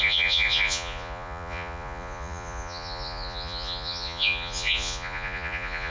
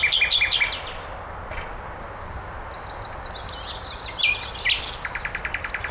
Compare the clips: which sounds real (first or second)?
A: second